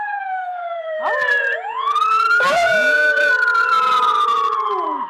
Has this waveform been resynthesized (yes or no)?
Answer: yes